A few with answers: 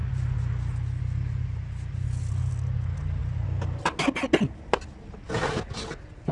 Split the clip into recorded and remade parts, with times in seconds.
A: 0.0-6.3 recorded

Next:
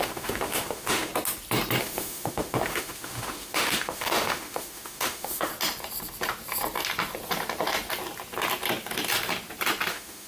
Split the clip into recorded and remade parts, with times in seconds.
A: 0.0-1.1 remade; 1.1-1.8 recorded; 1.8-5.5 remade; 5.5-9.9 recorded; 9.9-10.3 remade

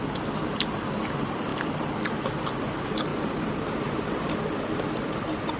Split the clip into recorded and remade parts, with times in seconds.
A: 0.0-5.6 recorded